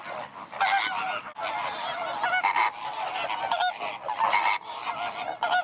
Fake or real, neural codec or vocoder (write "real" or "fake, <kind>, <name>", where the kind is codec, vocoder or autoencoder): real